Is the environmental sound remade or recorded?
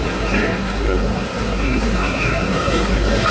remade